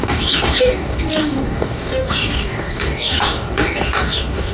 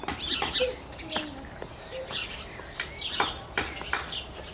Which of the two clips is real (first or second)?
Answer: second